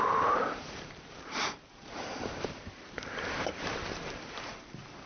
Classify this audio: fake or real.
fake